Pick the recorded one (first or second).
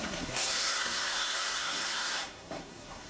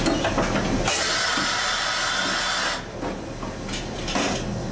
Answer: second